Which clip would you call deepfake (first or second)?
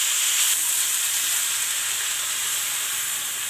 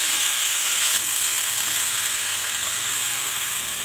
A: second